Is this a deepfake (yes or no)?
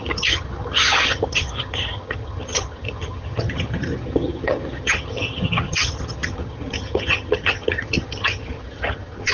yes